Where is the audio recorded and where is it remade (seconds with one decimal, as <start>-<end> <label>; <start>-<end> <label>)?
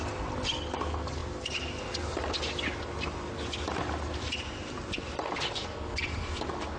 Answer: 0.0-6.8 recorded